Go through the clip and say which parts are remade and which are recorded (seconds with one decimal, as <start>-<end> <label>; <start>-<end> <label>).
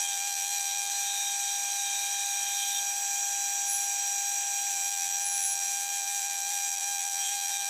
0.0-0.9 remade; 0.9-4.7 recorded; 4.7-7.7 remade